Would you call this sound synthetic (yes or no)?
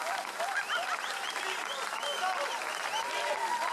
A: yes